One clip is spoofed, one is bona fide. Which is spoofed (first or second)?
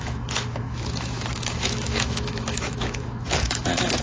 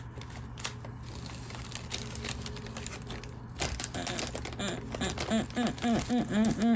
first